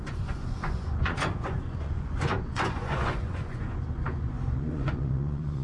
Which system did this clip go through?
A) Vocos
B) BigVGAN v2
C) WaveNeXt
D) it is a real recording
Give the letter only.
A